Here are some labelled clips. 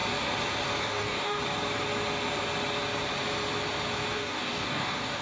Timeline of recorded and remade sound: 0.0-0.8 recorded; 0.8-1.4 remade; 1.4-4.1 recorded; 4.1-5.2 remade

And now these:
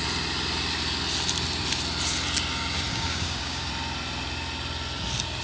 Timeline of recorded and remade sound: 0.0-2.9 recorded; 2.9-3.7 remade; 3.7-5.4 recorded

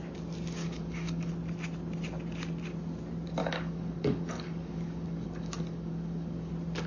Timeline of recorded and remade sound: 0.0-0.6 recorded; 0.6-1.3 remade; 1.3-3.4 recorded; 3.4-6.5 remade; 6.5-6.9 recorded

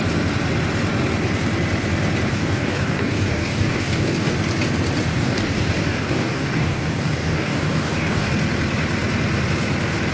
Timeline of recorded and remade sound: 0.0-2.3 recorded; 2.3-4.3 remade; 4.3-5.1 recorded; 5.1-8.3 remade; 8.3-10.1 recorded